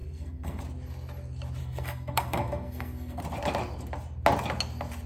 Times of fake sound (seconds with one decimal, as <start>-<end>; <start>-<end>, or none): 0.0-0.6; 1.6-3.2